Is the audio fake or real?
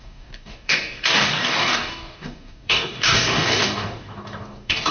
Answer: fake